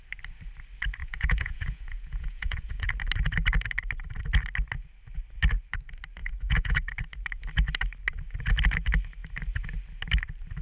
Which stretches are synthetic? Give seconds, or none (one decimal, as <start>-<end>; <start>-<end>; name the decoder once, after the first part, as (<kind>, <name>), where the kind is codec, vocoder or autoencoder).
1.0-2.9 (vocoder, Vocos); 6.2-6.9